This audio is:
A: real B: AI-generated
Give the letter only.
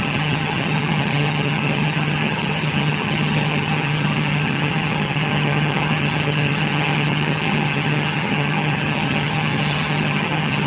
B